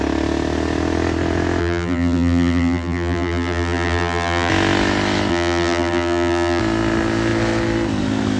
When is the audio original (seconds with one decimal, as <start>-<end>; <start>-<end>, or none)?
0.0-1.6; 4.5-5.3; 6.6-8.4